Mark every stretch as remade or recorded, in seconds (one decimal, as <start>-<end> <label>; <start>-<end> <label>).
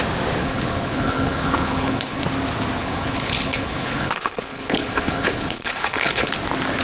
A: 0.0-0.4 recorded; 0.4-2.2 remade; 2.2-2.8 recorded; 2.8-6.3 remade; 6.3-6.8 recorded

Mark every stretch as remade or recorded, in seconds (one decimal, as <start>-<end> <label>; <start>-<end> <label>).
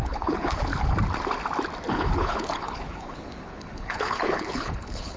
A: 0.0-0.7 remade; 0.7-1.9 recorded; 1.9-5.2 remade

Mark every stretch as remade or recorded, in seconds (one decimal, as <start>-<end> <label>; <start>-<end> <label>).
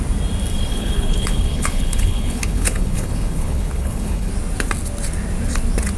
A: 0.0-0.7 recorded; 0.7-4.3 remade; 4.3-6.0 recorded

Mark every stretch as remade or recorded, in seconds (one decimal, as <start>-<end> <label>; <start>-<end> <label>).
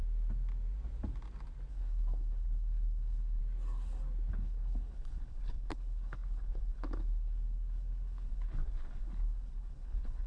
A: 0.0-1.7 recorded; 1.7-3.4 remade; 3.4-4.3 recorded; 4.3-10.3 remade